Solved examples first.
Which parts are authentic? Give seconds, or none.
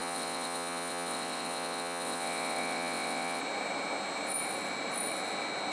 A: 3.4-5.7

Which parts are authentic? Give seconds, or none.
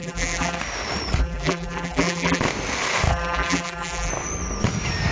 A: 0.6-1.2; 2.4-3.1; 4.1-5.1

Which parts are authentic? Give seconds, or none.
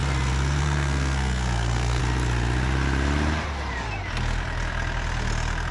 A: 0.0-0.6; 2.0-5.7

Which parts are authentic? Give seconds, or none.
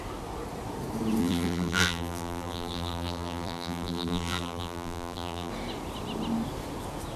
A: 0.0-1.2; 5.5-7.2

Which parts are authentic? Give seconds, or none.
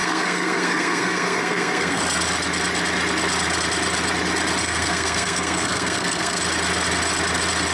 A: 2.0-4.6; 6.4-7.7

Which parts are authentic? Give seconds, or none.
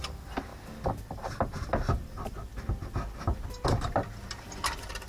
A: 0.0-5.1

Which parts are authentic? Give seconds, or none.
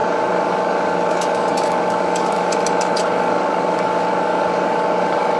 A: 2.5-3.0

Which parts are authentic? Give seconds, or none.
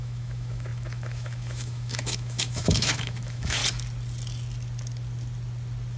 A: 3.6-6.0